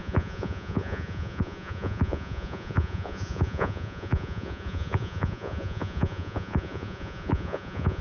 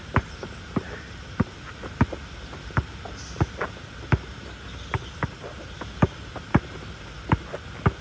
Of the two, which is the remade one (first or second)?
first